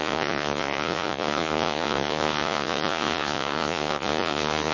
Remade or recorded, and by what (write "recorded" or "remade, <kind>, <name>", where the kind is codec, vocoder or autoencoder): remade, vocoder, Vocos